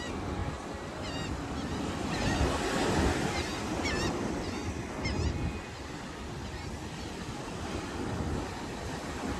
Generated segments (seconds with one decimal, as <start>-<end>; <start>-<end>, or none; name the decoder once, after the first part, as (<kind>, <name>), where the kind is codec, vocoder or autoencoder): none